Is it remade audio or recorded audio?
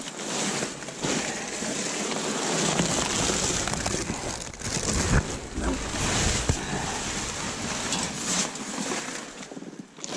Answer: recorded